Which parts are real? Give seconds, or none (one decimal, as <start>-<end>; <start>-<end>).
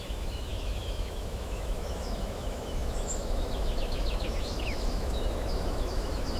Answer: none